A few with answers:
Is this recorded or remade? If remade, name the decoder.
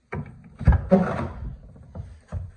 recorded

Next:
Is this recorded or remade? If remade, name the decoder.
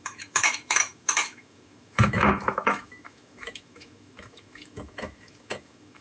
remade, autoencoder, DAC-VAE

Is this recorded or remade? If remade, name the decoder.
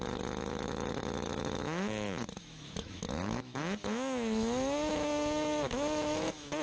remade, autoencoder, DAC-VAE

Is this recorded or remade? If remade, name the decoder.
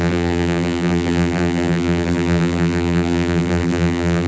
remade, vocoder, BigVGAN v2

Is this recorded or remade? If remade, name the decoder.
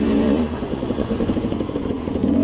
remade, vocoder, Vocos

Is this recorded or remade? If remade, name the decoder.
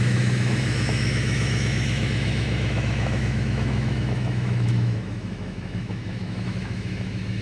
remade, autoencoder, DAC-VAE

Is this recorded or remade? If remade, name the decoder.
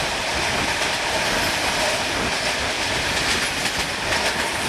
recorded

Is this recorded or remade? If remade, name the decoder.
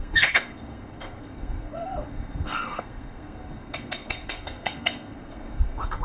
remade, codec, SNAC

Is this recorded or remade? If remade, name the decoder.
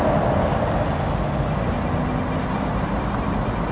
recorded